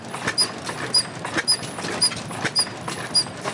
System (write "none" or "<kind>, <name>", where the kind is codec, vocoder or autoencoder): none